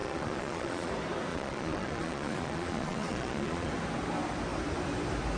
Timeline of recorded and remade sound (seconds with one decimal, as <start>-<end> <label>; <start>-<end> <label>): 0.0-0.9 remade; 0.9-1.3 recorded; 1.3-3.7 remade; 3.7-5.4 recorded